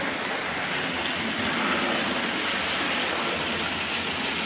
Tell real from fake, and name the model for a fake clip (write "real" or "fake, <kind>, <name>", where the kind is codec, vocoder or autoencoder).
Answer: real